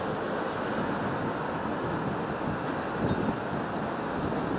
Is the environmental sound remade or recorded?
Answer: recorded